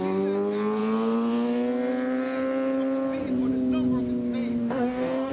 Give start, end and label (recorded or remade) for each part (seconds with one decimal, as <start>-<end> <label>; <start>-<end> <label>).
0.0-4.6 recorded; 4.6-5.3 remade